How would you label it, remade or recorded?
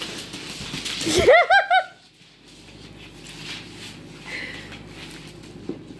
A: recorded